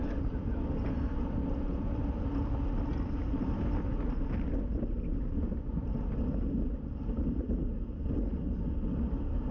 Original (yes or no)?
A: yes